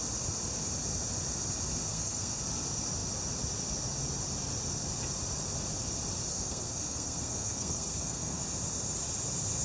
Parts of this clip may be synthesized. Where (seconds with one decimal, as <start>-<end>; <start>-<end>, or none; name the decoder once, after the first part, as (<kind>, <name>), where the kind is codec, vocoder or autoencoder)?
1.9-2.4 (codec, SNAC); 6.3-8.4